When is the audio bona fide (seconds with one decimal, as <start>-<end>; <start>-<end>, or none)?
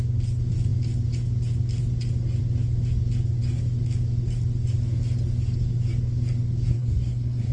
0.0-6.7